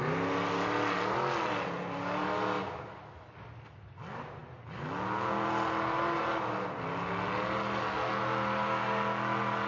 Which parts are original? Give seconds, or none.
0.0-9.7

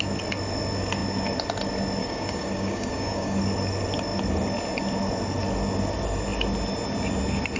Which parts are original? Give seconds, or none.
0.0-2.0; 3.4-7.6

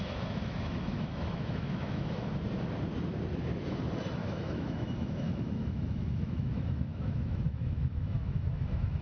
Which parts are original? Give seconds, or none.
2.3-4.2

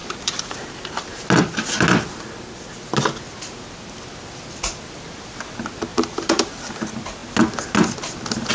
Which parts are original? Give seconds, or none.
0.7-5.9; 6.5-8.5

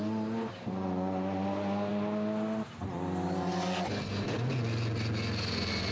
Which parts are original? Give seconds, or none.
0.0-5.9

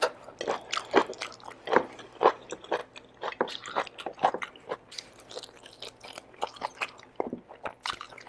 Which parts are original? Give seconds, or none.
0.0-8.3

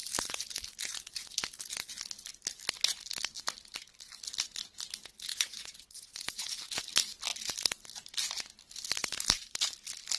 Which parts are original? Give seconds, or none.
0.0-5.3; 6.5-10.2